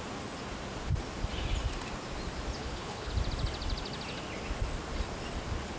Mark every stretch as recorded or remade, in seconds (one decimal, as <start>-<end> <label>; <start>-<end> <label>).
0.0-2.6 recorded; 2.6-3.1 remade; 3.1-5.8 recorded